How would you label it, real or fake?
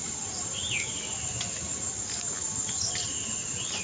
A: real